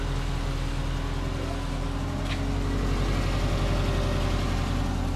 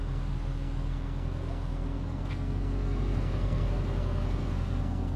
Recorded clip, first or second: first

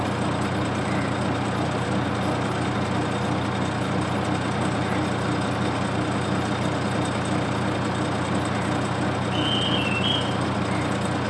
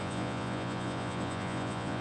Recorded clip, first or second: first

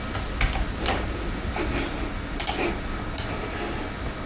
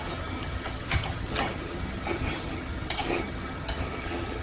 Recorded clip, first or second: first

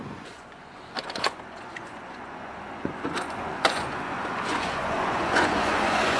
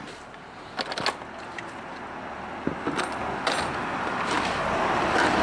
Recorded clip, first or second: second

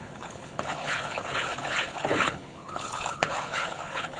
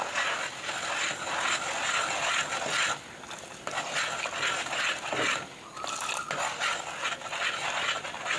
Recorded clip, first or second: second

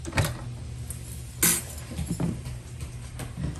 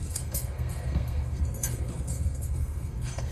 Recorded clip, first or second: first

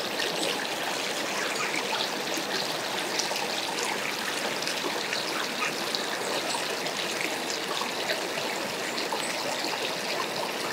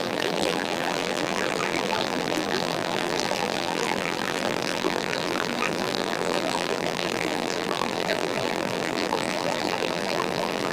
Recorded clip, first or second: first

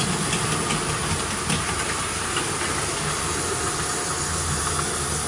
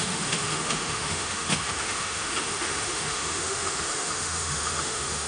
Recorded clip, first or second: first